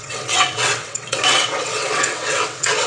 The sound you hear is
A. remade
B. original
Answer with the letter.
A